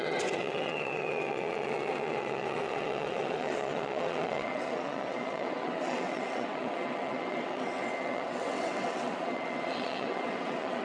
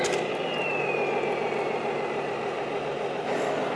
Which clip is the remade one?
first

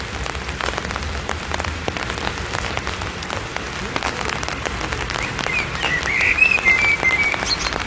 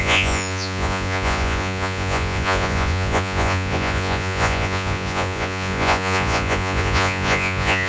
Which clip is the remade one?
second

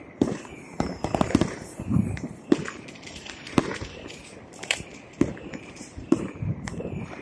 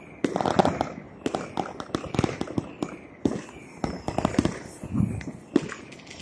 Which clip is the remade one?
first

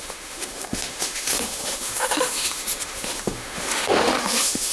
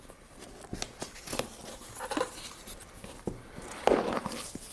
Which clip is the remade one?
first